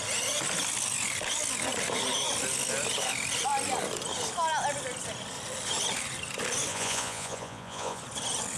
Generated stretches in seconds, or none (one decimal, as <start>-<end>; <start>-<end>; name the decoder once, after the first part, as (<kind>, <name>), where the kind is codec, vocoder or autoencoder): 6.7-8.0 (vocoder, Vocos)